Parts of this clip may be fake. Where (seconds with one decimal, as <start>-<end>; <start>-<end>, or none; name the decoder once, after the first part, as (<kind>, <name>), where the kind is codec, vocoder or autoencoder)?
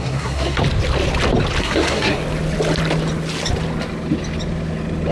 0.0-0.6 (codec, SNAC); 1.6-2.2